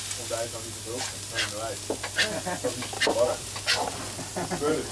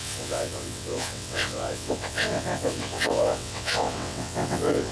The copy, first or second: second